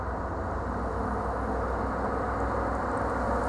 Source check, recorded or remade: recorded